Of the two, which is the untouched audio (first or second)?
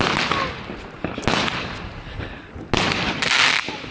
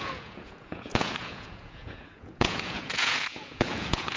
first